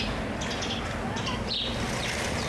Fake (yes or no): no